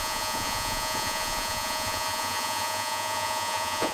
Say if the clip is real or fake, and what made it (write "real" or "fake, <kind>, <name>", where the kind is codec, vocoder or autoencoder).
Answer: fake, vocoder, Vocos